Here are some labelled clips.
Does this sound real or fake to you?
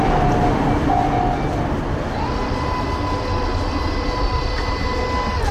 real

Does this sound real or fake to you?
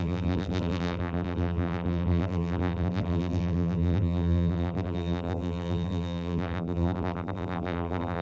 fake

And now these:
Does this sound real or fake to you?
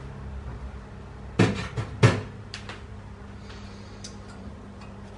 real